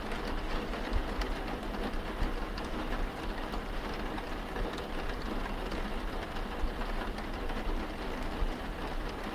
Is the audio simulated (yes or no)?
no